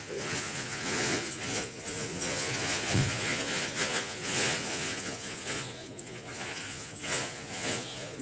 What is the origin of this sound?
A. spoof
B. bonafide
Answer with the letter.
A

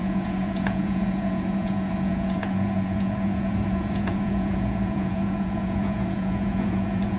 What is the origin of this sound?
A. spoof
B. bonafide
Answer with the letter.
A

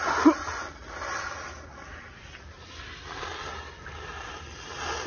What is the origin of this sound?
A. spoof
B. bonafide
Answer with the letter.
B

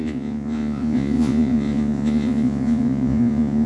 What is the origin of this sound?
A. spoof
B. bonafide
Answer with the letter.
A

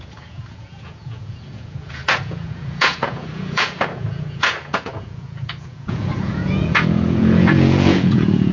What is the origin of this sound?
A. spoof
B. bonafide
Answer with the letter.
A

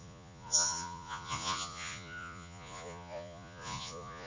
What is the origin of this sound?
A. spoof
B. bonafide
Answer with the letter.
A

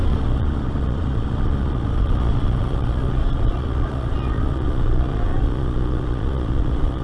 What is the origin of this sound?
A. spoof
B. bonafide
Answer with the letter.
A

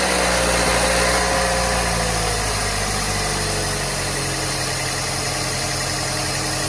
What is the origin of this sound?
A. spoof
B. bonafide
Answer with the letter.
B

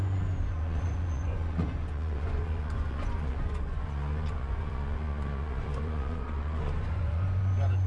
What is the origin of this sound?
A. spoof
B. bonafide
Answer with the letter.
A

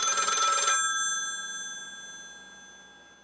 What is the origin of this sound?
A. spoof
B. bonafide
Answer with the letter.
B